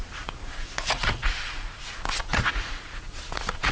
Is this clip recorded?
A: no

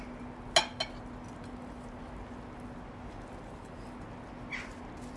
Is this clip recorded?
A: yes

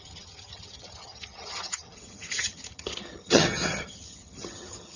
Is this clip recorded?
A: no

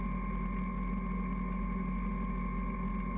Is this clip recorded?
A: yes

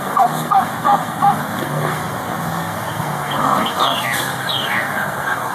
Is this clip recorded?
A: no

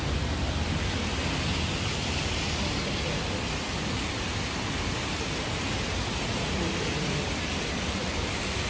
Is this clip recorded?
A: yes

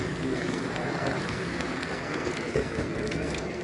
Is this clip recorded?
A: no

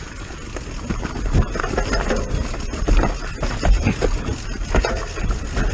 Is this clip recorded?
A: yes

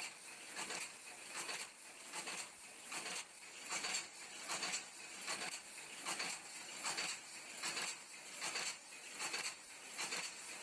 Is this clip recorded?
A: yes